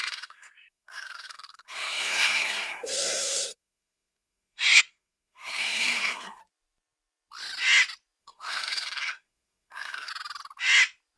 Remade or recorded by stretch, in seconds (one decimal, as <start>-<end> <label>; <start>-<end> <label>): 0.0-6.4 remade; 6.4-8.2 recorded; 8.2-10.1 remade; 10.1-11.2 recorded